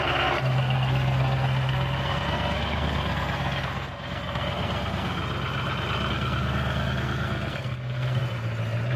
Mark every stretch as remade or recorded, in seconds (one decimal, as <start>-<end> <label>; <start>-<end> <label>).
0.0-5.2 remade; 5.2-6.1 recorded; 6.1-8.2 remade; 8.2-9.0 recorded